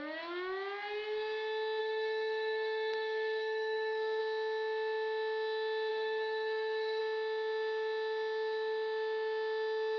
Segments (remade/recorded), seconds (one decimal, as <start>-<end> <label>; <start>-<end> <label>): 0.0-1.8 recorded; 1.8-4.2 remade; 4.2-5.9 recorded; 5.9-7.0 remade; 7.0-10.0 recorded